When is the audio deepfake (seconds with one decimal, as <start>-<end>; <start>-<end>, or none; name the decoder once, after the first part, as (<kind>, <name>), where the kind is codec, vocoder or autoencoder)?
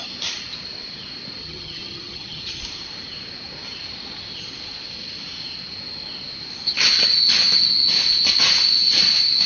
1.4-2.6 (vocoder, HiFi-GAN)